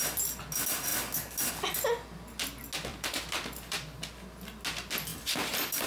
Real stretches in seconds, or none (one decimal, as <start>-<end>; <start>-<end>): 0.0-2.9; 3.8-5.1

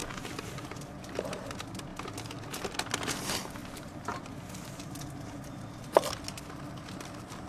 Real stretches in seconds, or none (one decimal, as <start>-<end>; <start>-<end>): 0.0-3.6; 4.3-7.5

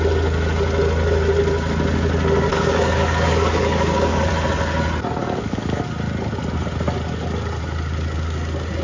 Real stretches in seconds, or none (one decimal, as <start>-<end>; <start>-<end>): 0.0-2.5; 4.3-5.2; 5.8-8.8

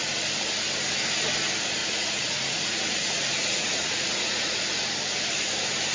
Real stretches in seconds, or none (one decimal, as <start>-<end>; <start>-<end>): 0.0-1.8; 4.6-5.9